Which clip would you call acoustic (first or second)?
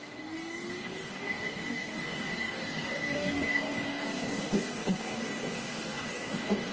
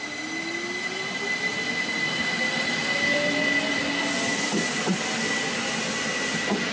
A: second